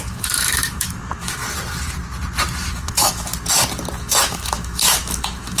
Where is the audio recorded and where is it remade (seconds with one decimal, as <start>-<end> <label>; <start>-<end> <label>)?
0.0-1.4 remade; 1.4-2.7 recorded; 2.7-3.3 remade; 3.3-4.0 recorded; 4.0-5.6 remade